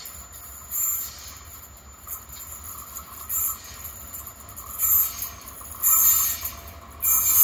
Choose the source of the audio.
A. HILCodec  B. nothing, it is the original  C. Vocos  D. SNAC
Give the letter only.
B